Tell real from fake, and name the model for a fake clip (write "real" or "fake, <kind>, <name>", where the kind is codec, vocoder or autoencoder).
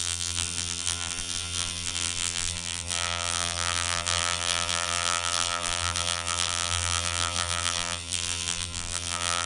fake, vocoder, BigVGAN v2